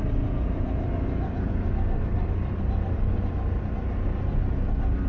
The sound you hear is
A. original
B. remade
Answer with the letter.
A